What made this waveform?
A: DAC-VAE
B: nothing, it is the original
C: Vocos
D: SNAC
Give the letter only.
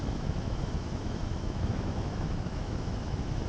A